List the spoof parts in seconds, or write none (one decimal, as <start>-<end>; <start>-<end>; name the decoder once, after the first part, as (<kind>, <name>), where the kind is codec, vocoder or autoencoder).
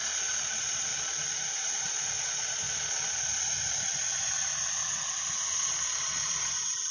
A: none